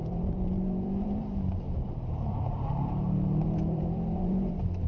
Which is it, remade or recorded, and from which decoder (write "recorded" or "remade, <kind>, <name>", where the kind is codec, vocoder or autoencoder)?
remade, vocoder, BigVGAN v2